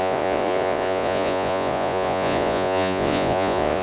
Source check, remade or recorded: remade